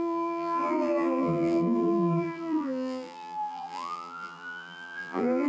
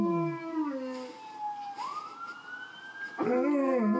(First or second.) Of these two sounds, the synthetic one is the first